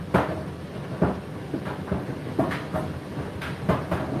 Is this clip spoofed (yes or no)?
no